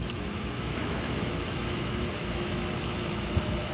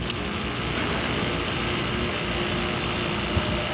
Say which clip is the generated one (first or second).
first